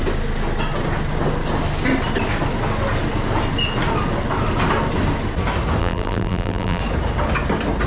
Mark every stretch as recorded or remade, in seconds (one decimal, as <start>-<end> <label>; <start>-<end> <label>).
0.0-5.8 recorded; 5.8-6.8 remade; 6.8-7.9 recorded